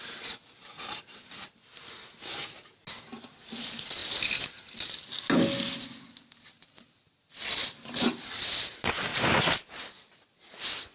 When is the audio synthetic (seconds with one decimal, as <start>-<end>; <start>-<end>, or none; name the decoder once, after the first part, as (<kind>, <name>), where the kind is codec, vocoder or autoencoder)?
9.1-9.8 (vocoder, BigVGAN v2)